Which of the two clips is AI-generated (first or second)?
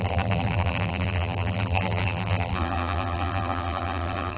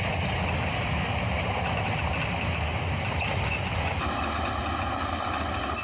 first